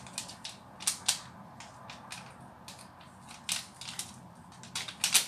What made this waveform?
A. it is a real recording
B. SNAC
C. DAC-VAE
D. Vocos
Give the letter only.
A